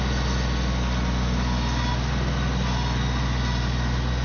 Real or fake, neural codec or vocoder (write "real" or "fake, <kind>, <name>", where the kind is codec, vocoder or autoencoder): real